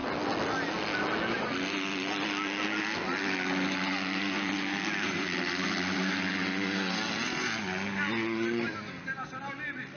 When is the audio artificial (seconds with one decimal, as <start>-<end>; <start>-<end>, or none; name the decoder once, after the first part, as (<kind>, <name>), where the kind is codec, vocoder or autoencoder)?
none